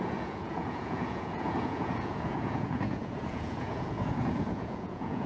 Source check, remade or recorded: remade